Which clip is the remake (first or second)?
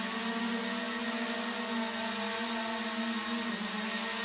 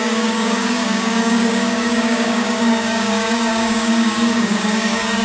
second